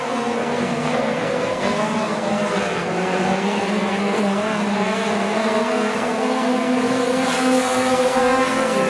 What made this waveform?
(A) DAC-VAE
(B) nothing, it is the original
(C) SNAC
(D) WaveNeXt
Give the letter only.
C